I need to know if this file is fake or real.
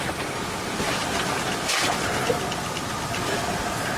fake